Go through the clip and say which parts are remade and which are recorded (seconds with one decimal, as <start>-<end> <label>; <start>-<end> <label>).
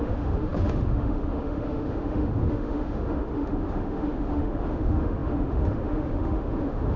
0.0-7.0 remade